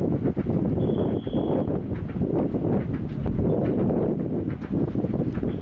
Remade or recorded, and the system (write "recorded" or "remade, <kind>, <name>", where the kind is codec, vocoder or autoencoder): recorded